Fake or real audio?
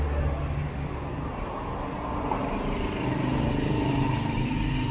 real